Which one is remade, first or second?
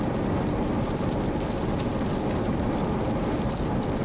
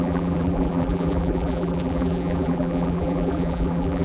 second